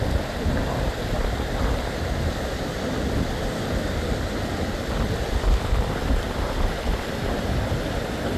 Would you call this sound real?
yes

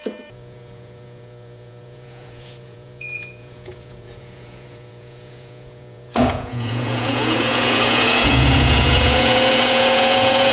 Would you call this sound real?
no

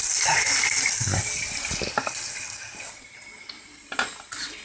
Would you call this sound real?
yes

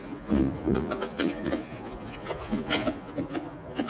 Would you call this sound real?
no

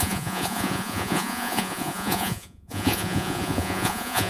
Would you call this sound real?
no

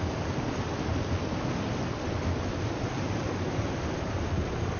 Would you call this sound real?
yes